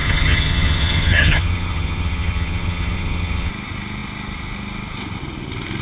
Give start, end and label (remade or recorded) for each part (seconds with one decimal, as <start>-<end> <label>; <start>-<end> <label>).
0.0-3.5 remade; 3.5-5.8 recorded